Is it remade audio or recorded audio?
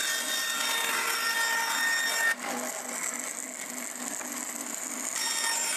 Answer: recorded